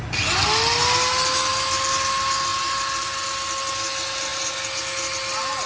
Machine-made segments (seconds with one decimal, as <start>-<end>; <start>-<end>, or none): none